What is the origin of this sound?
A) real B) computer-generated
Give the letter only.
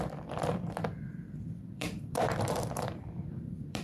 B